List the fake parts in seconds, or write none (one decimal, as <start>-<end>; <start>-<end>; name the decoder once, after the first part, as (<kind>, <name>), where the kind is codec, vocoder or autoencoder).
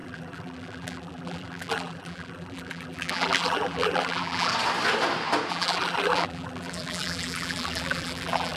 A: 0.0-4.5 (vocoder, BigVGAN v2); 5.5-8.6